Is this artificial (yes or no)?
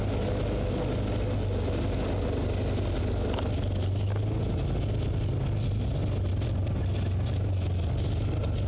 no